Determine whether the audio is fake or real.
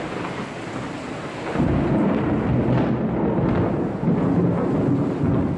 real